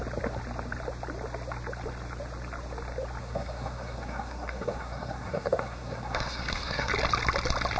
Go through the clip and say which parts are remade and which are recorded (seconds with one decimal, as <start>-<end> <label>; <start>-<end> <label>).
0.0-3.2 recorded; 3.2-6.9 remade; 6.9-7.8 recorded